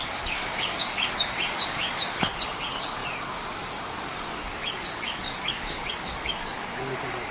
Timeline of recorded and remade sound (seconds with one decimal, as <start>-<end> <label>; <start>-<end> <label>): 0.0-7.3 remade